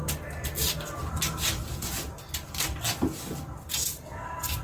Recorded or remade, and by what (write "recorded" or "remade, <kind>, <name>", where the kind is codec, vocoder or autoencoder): recorded